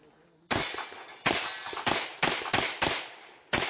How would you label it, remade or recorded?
recorded